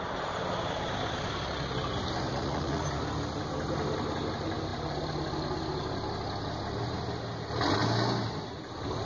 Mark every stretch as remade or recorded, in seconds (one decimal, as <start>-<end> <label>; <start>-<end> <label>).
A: 0.0-2.3 recorded; 2.3-2.8 remade; 2.8-9.1 recorded